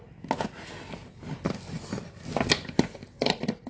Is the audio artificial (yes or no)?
no